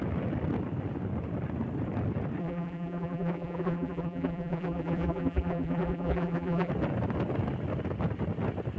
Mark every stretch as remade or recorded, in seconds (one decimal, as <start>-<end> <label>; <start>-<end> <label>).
0.0-2.4 recorded; 2.4-6.7 remade; 6.7-8.8 recorded